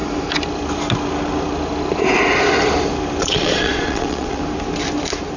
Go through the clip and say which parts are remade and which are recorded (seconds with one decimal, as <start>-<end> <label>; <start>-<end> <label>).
0.0-3.2 recorded; 3.2-4.4 remade; 4.4-5.4 recorded